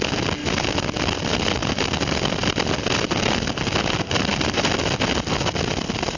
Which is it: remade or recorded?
recorded